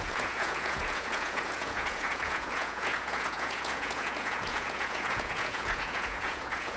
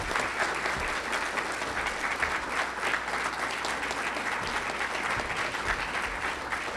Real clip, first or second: second